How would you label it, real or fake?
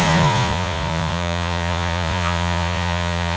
fake